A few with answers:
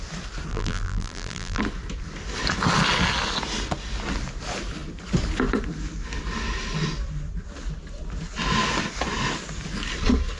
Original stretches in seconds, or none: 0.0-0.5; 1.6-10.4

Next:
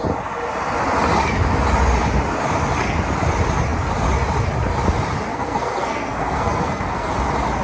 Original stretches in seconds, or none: 0.0-5.3; 7.1-7.6

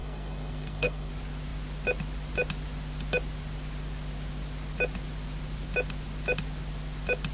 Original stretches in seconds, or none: 1.1-7.3

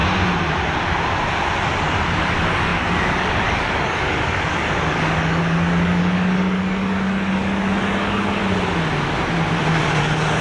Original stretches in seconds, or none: 0.0-2.2; 8.4-10.0

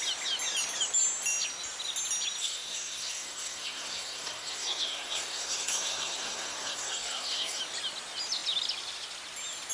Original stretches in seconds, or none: 0.0-2.4; 7.6-9.7